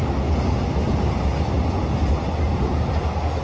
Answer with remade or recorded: recorded